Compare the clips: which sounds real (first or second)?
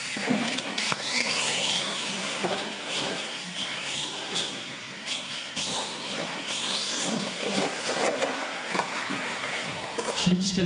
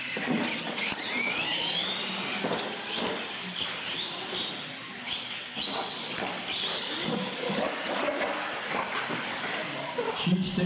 second